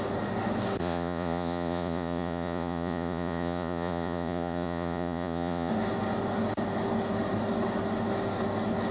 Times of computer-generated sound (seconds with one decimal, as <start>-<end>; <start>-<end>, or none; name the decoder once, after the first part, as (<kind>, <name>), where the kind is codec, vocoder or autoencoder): 0.8-5.7 (vocoder, Vocos)